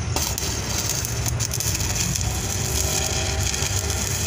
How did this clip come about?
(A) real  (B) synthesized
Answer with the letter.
A